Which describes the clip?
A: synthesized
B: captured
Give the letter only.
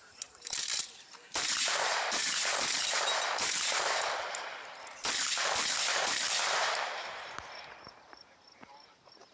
A